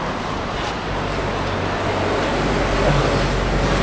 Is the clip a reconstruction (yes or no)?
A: no